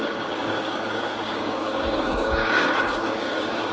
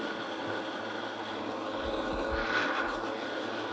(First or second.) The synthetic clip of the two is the first